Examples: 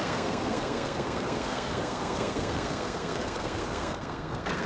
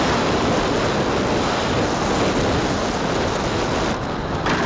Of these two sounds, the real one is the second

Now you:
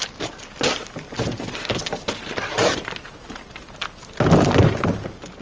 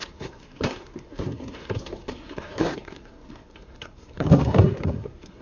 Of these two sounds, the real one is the first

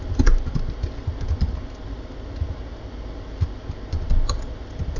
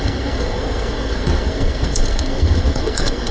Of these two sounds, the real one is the first